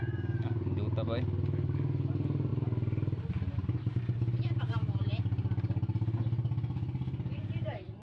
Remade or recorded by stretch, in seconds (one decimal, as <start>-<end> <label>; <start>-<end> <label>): 0.0-8.0 recorded